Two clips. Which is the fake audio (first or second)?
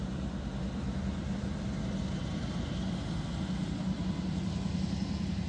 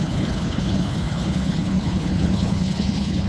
second